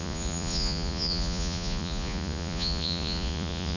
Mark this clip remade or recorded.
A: remade